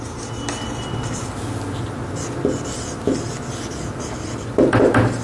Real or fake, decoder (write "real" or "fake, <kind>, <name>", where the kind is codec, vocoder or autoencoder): real